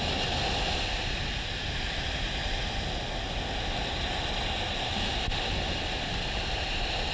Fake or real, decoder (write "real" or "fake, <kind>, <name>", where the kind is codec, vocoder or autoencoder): real